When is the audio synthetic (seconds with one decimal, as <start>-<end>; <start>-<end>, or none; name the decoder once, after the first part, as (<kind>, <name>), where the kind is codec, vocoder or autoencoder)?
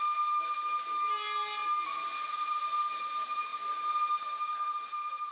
none